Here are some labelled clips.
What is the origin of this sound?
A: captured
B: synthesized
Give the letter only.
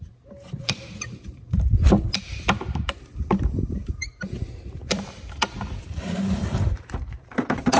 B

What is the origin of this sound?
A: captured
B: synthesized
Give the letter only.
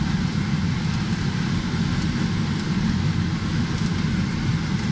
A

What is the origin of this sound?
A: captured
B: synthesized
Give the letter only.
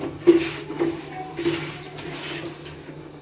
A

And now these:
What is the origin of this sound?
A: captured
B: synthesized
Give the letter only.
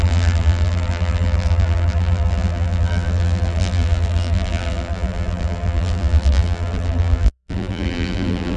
B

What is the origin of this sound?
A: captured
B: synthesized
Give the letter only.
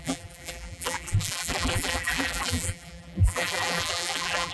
B